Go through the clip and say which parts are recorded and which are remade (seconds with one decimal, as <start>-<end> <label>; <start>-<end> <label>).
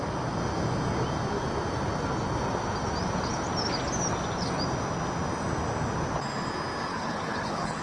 0.0-6.9 recorded; 6.9-7.8 remade